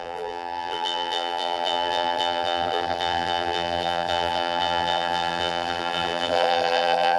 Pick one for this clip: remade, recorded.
remade